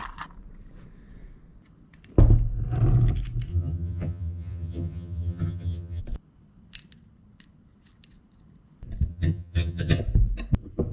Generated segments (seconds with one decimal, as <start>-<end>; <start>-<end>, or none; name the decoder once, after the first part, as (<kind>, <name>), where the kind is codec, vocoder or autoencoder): 3.5-6.0 (vocoder, HiFi-GAN); 9.1-10.0